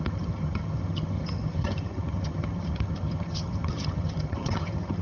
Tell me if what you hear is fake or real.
fake